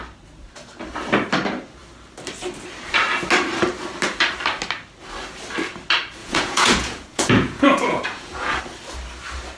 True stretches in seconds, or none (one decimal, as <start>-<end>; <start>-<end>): 0.0-6.2; 8.6-9.6